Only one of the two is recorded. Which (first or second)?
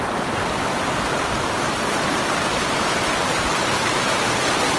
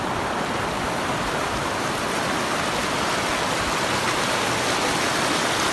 second